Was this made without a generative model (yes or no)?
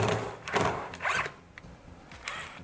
yes